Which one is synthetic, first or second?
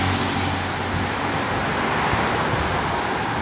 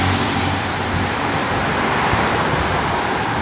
second